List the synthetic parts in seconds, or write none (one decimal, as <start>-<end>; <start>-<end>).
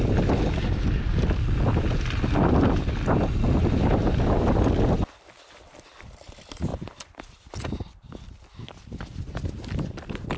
6.7-8.1